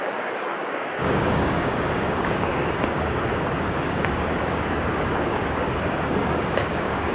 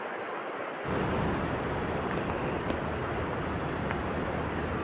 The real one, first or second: second